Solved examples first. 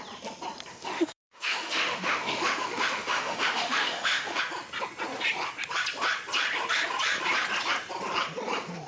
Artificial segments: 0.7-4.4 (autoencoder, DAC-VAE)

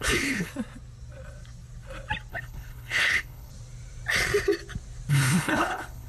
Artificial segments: 0.0-0.5 (codec, HILCodec); 2.3-3.5; 5.1-6.1